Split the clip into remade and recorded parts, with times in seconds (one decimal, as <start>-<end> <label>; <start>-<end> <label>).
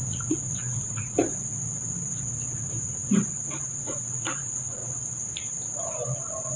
0.0-1.2 remade; 1.2-3.7 recorded; 3.7-4.8 remade; 4.8-6.6 recorded